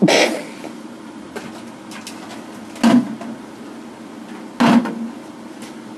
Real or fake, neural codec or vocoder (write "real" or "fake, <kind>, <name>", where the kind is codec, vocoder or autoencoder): real